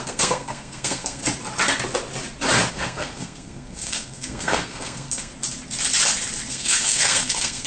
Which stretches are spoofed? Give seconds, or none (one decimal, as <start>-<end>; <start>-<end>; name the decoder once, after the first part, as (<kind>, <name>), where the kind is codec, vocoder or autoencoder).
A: 0.0-1.2 (codec, SNAC); 2.7-5.3; 6.5-7.7

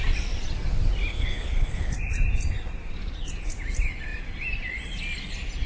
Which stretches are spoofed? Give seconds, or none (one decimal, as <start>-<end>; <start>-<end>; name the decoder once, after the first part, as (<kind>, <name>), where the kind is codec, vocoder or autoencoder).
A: 1.1-1.9 (codec, HILCodec)